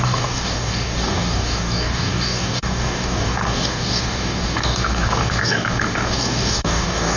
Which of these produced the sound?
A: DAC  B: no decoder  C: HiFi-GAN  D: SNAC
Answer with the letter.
A